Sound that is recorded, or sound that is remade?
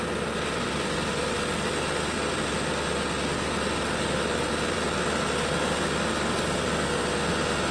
recorded